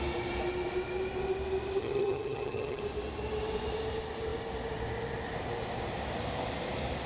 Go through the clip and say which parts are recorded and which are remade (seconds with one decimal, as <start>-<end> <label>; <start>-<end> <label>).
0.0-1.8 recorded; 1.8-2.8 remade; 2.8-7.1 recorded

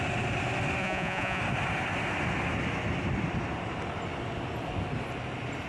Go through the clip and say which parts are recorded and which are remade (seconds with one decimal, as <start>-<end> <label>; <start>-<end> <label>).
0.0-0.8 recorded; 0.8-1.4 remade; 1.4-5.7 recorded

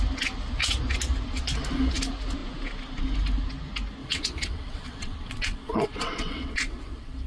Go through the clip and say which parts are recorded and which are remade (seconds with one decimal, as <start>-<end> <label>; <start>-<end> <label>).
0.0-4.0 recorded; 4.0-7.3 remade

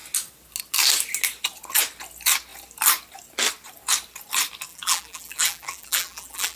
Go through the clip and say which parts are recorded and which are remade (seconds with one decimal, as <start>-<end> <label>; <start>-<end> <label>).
0.0-4.7 recorded; 4.7-6.6 remade